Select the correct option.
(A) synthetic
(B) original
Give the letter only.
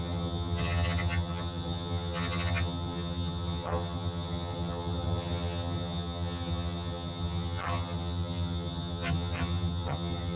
A